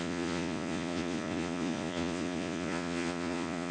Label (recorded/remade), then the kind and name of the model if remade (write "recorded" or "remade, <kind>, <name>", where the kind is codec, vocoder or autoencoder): remade, vocoder, Vocos